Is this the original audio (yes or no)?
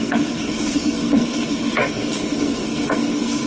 no